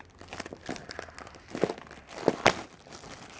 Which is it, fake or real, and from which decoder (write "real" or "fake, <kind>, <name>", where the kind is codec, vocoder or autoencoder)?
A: real